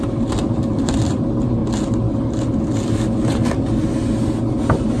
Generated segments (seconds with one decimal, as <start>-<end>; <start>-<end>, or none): 0.0-1.6; 4.4-5.0

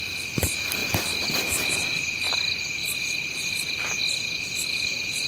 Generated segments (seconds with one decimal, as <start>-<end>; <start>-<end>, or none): 2.8-4.0

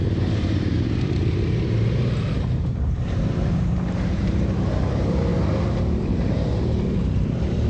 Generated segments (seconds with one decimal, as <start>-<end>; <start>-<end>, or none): 0.0-5.3; 6.0-7.7

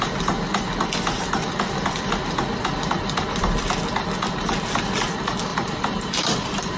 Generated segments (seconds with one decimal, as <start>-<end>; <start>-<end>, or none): 5.5-6.8

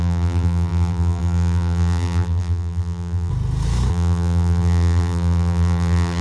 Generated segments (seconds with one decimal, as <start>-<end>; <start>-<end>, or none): 0.0-3.3; 3.9-6.2

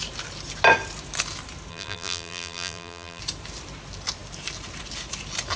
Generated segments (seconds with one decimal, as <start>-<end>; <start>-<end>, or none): 1.7-3.2

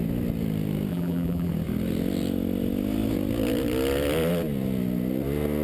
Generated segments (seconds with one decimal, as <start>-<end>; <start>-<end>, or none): 0.9-1.5

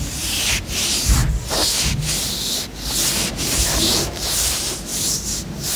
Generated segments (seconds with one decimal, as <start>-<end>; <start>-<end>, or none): 0.0-1.2; 3.3-4.9